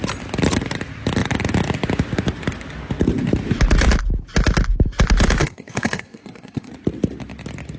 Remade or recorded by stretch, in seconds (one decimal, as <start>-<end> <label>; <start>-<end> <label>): 0.0-5.4 recorded; 5.4-6.7 remade; 6.7-7.8 recorded